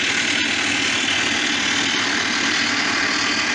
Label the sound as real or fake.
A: real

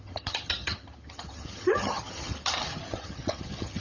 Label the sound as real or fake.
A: fake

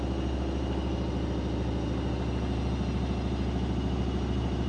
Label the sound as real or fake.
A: real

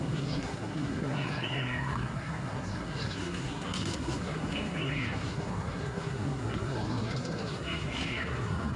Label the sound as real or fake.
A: fake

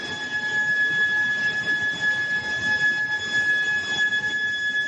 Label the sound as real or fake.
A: real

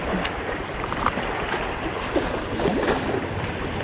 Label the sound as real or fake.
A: real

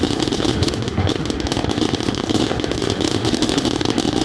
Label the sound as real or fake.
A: fake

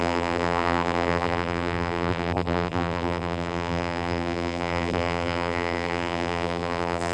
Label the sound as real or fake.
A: fake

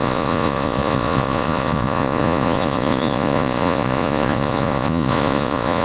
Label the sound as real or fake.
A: fake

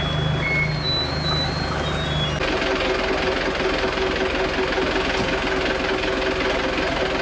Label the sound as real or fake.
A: real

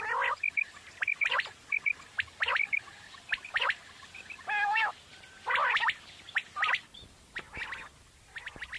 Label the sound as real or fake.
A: real